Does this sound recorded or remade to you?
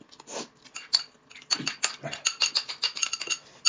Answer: recorded